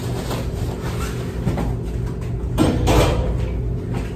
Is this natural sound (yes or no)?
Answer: yes